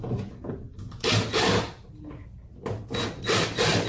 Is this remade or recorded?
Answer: recorded